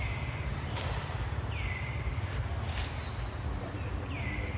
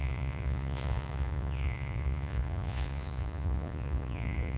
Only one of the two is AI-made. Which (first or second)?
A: second